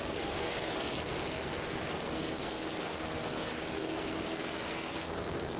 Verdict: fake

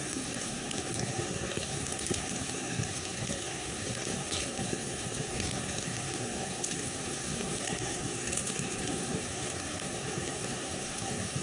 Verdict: fake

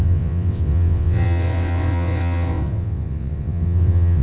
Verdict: fake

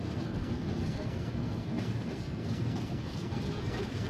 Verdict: fake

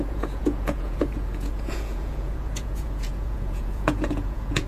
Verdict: fake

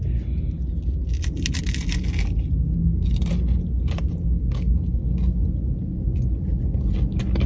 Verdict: real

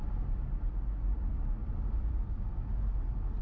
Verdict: real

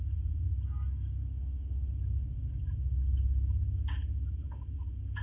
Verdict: real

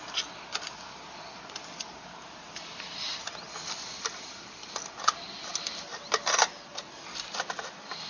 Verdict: real